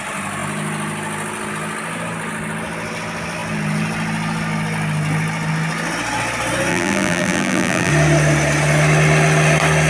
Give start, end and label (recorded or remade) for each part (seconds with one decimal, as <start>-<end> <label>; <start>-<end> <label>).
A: 0.0-6.7 recorded; 6.7-7.9 remade; 7.9-9.9 recorded